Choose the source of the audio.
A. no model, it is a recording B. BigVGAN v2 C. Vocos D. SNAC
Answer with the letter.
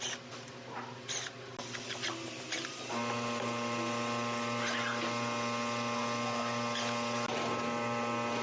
A